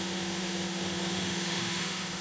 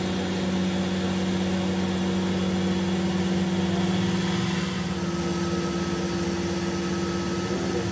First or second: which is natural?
second